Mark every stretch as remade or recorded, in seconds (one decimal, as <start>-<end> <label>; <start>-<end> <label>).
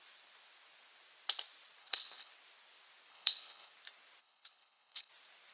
0.0-1.8 recorded; 1.8-2.3 remade; 2.3-3.1 recorded; 3.1-3.7 remade; 3.7-4.2 recorded; 4.2-5.1 remade; 5.1-5.5 recorded